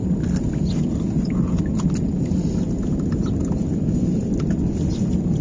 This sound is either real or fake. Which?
real